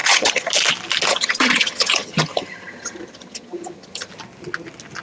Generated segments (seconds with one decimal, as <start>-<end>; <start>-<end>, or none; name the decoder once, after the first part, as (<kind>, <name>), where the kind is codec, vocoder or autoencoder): 0.0-0.5 (vocoder, HiFi-GAN); 1.1-4.1